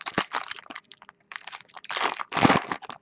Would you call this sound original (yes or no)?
no